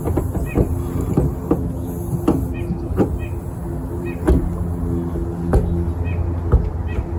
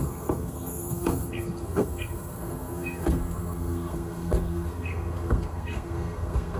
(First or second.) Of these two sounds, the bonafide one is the first